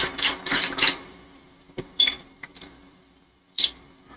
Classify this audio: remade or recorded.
remade